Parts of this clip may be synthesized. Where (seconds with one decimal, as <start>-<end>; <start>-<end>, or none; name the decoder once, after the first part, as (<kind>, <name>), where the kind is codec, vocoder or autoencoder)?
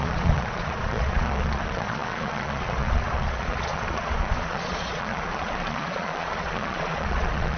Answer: 0.0-7.6 (vocoder, Vocos)